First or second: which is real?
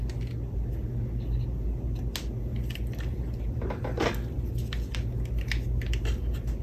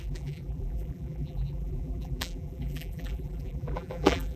first